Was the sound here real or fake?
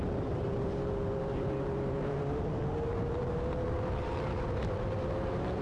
fake